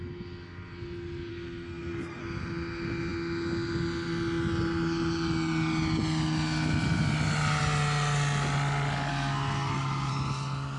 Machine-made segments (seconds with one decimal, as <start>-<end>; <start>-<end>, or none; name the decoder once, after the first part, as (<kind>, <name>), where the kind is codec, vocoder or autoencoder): 1.3-2.2 (codec, SNAC); 9.1-10.1